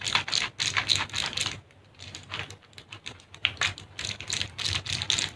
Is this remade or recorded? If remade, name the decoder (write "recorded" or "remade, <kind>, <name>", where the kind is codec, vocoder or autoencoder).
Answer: recorded